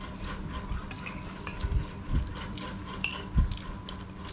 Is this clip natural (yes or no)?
yes